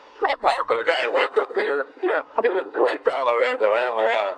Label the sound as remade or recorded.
remade